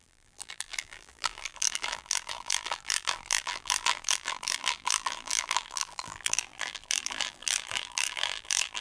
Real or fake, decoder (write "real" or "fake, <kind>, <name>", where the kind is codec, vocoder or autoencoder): fake, vocoder, BigVGAN v2